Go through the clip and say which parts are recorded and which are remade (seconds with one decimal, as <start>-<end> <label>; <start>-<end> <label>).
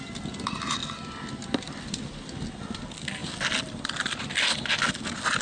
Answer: 0.0-5.4 recorded